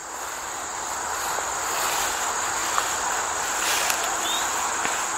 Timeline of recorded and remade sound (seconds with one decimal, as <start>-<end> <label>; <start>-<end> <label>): 0.0-5.2 recorded